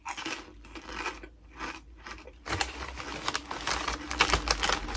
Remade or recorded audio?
recorded